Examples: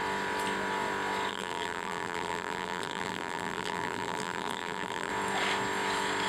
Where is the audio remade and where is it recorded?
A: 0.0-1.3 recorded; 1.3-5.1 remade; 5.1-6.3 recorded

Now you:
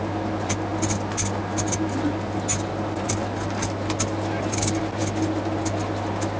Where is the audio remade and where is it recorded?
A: 0.0-6.4 recorded

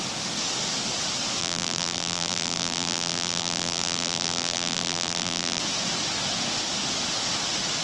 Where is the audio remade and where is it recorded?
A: 0.0-1.4 recorded; 1.4-5.6 remade; 5.6-7.8 recorded

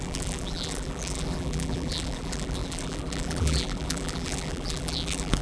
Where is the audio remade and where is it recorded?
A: 0.0-5.4 remade

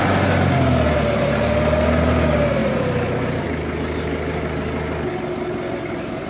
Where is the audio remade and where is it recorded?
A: 0.0-6.3 recorded

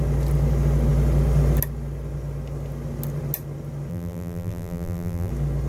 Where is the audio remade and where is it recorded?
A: 0.0-3.9 recorded; 3.9-5.3 remade; 5.3-5.7 recorded

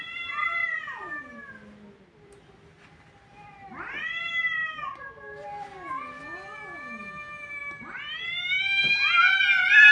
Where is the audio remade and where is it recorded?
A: 0.0-0.6 recorded; 0.6-1.5 remade; 1.5-9.9 recorded

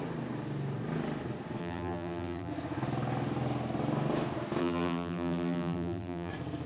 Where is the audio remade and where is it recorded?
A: 0.0-1.6 recorded; 1.6-2.5 remade; 2.5-4.6 recorded; 4.6-6.3 remade; 6.3-6.7 recorded